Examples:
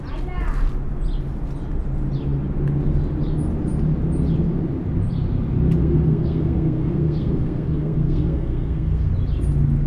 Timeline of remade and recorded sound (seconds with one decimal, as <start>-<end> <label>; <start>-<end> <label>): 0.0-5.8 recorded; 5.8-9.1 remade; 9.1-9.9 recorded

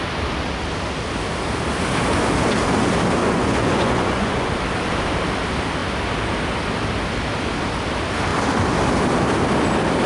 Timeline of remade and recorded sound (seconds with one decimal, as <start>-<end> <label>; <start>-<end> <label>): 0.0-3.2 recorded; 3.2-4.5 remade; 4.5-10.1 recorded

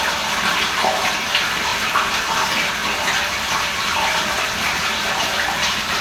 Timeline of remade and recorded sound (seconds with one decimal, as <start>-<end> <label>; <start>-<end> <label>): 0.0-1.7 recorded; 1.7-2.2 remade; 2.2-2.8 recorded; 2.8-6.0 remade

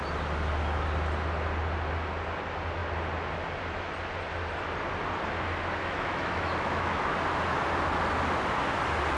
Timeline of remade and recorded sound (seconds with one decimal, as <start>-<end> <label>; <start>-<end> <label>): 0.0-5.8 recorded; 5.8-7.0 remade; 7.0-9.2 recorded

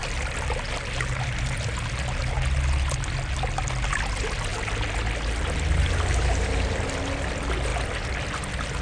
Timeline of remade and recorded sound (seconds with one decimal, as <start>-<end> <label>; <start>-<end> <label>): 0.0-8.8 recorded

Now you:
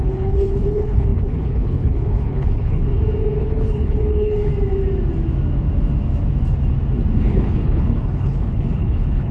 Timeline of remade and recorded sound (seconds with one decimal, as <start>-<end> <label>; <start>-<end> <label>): 0.0-2.9 remade; 2.9-3.4 recorded; 3.4-4.5 remade; 4.5-7.2 recorded; 7.2-9.3 remade